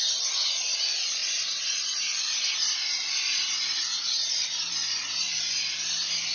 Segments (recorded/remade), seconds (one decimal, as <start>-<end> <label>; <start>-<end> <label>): 0.0-6.3 recorded